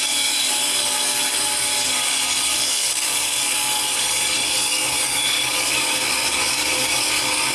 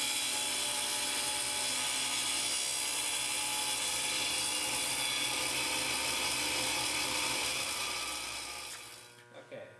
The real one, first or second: second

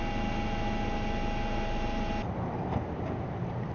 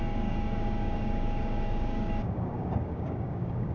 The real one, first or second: first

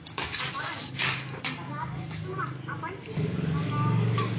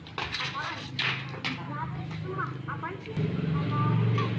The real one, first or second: second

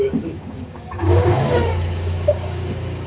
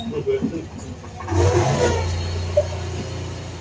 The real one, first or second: second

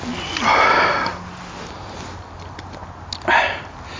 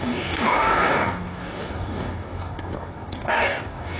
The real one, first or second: first